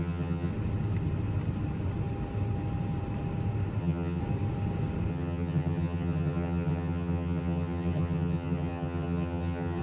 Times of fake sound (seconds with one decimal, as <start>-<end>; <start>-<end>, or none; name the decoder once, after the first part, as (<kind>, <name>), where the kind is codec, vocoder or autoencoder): 0.0-0.5 (vocoder, HiFi-GAN); 3.8-4.2; 5.1-9.8